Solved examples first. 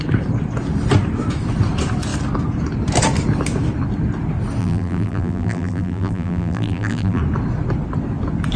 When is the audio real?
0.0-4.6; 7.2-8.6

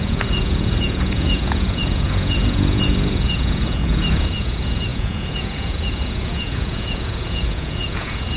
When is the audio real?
none

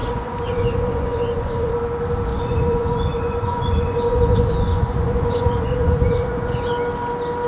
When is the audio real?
1.7-2.3; 6.7-7.5

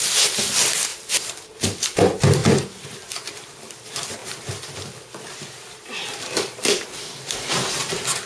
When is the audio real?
0.0-8.3

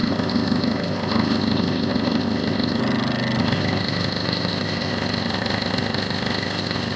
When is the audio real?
2.8-3.4